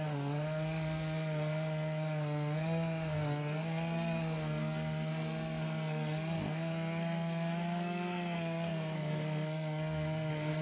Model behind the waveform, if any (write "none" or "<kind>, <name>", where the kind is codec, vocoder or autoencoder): codec, SNAC